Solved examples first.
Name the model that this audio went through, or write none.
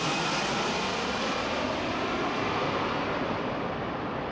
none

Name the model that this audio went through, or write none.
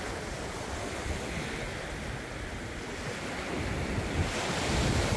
none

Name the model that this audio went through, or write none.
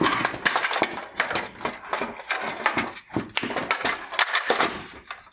none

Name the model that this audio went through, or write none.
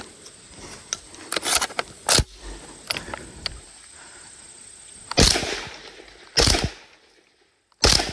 none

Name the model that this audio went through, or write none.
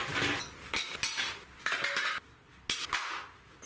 none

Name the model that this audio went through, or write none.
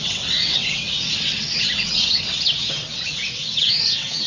vocoder, WaveNeXt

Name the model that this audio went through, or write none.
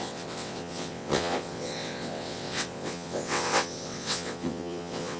vocoder, WaveNeXt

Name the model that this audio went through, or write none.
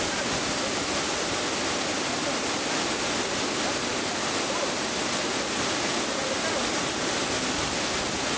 none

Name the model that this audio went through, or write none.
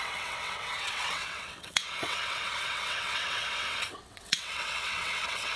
vocoder, WaveNeXt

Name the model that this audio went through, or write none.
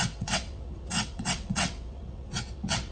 vocoder, WaveNeXt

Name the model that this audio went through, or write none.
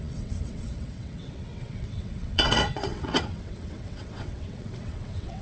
vocoder, WaveNeXt